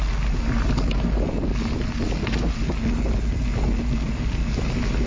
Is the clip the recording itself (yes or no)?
yes